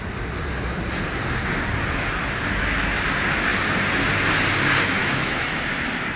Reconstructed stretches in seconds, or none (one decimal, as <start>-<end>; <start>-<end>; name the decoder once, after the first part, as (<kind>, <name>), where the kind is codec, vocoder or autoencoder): 5.0-5.6 (autoencoder, DAC-VAE)